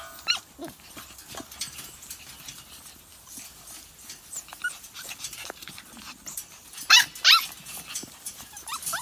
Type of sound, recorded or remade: recorded